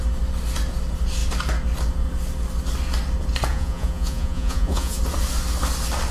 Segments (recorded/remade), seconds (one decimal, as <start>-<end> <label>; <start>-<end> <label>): 0.0-3.5 recorded; 3.5-5.0 remade; 5.0-6.1 recorded